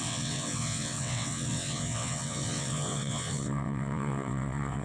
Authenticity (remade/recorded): remade